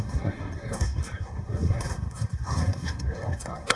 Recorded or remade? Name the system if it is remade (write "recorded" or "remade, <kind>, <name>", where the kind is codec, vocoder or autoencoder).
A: remade, codec, SNAC